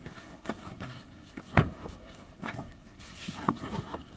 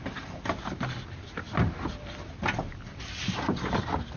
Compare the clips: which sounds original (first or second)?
second